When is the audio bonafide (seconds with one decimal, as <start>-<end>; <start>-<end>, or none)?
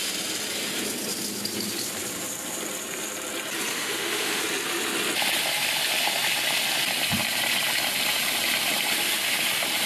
0.0-3.7; 4.4-9.9